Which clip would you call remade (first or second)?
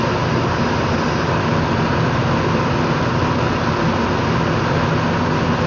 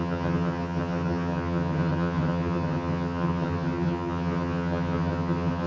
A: second